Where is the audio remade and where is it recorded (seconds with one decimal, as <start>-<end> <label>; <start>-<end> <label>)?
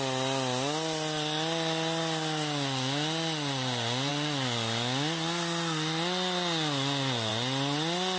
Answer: 0.0-8.2 recorded